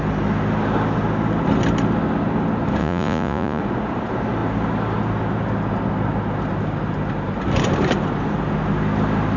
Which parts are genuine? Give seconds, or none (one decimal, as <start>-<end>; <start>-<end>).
0.0-2.8; 3.6-9.4

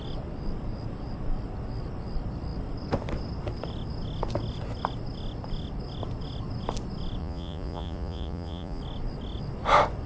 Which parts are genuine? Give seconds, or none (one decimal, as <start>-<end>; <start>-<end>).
0.0-7.2; 8.8-10.1

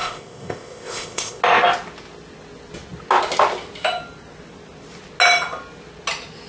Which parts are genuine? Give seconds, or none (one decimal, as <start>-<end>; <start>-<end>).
1.4-6.5

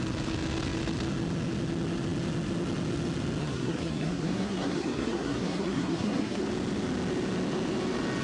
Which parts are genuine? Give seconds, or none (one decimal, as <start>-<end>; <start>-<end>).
0.0-3.4; 6.4-8.2

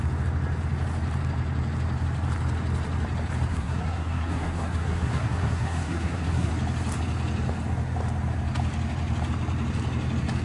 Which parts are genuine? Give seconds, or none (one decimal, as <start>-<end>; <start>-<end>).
0.0-3.5; 6.5-10.4

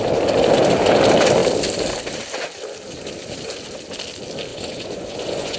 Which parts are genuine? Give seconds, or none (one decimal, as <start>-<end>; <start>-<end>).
0.0-4.5

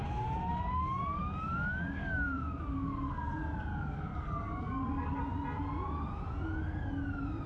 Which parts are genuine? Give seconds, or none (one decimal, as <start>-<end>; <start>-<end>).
0.0-0.5; 3.1-3.7; 5.2-7.5

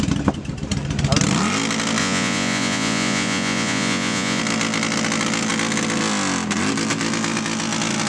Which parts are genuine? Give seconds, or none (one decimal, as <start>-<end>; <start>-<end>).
0.0-2.0; 4.4-8.1